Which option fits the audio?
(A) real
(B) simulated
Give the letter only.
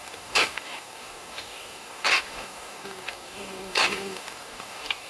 B